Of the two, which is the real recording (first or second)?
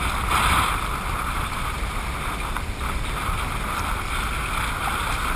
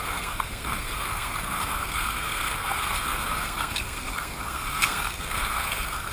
first